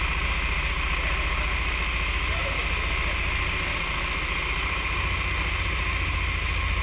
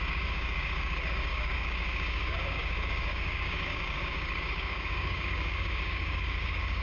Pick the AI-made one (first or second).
second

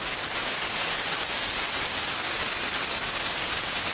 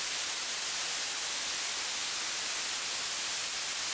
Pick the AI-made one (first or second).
first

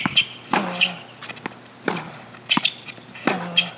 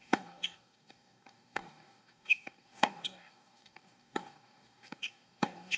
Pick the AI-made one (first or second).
second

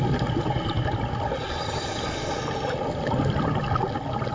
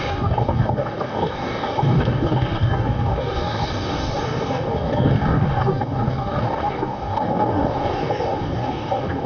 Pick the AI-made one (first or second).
second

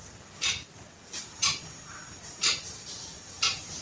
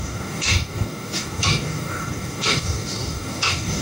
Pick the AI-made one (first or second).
second